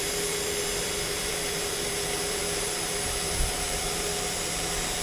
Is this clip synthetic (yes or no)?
yes